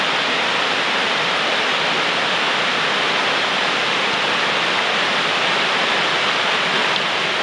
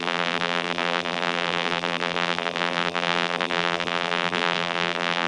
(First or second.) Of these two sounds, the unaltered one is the first